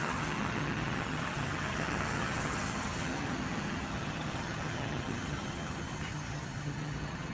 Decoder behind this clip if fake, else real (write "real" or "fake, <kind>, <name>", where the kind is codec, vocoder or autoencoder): fake, vocoder, HiFi-GAN